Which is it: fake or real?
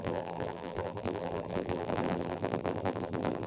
fake